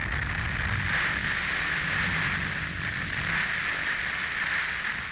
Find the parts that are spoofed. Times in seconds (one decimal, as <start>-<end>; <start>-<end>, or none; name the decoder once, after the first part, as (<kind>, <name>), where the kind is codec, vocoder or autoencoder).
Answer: none